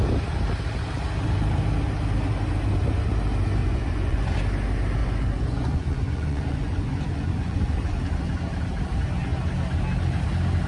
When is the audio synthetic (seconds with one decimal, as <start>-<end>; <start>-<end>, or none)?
3.6-4.4; 5.0-8.0